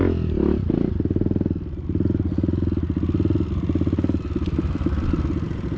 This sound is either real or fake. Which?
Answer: real